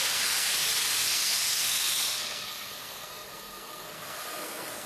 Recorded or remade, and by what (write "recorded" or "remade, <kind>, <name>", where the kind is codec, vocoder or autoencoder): remade, codec, SNAC